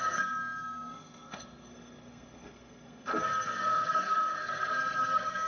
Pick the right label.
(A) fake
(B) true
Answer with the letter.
A